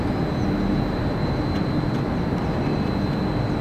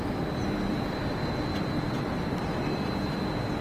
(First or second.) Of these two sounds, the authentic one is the first